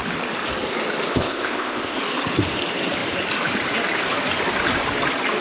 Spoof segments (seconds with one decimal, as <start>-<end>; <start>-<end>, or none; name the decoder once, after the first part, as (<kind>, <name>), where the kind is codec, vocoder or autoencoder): 1.1-2.0 (codec, ZipCodec)